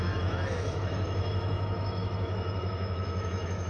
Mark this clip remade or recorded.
remade